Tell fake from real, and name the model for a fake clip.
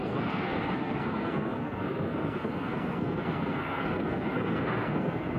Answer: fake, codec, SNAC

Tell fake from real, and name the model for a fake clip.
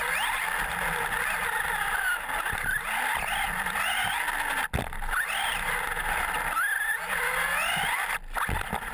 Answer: real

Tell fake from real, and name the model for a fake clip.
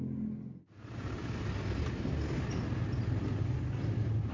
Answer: real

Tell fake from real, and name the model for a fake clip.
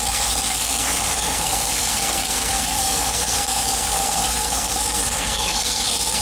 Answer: fake, codec, SNAC